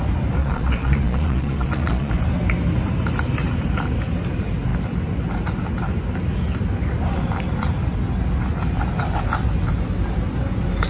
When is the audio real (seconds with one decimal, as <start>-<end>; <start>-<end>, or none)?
0.0-0.4; 2.1-10.9